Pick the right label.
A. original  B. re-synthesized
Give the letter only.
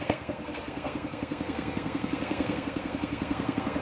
B